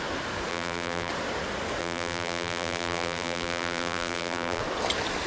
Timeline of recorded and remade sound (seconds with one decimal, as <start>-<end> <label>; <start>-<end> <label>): 0.0-0.5 recorded; 0.5-1.1 remade; 1.1-1.8 recorded; 1.8-4.6 remade; 4.6-5.3 recorded